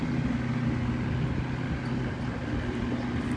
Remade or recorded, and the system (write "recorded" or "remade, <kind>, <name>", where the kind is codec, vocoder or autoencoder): recorded